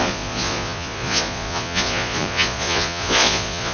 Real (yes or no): no